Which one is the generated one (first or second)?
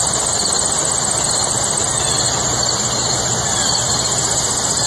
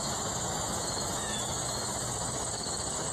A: second